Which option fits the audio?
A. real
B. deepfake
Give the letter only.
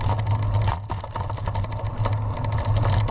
A